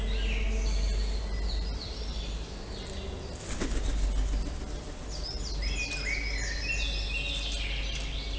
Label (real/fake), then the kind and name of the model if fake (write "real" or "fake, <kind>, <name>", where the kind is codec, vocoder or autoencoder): real